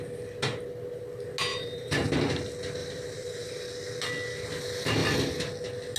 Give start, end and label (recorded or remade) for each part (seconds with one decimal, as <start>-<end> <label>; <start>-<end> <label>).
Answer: 0.0-1.5 recorded; 1.5-2.1 remade; 2.1-2.8 recorded; 2.8-3.5 remade; 3.5-6.0 recorded